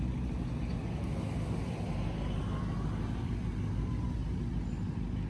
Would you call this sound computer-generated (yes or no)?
no